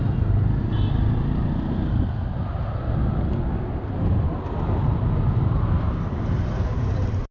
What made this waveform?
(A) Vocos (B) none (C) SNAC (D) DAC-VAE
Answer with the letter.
B